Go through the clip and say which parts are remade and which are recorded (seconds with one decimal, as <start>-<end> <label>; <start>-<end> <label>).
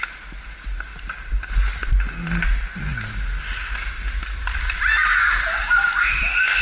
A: 0.0-0.9 recorded; 0.9-1.5 remade; 1.5-6.6 recorded